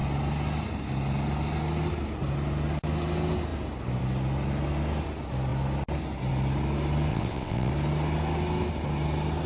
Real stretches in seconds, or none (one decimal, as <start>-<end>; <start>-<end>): 0.0-7.1; 7.7-9.5